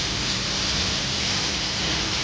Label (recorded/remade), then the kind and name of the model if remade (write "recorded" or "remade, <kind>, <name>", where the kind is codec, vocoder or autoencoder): remade, vocoder, BigVGAN v2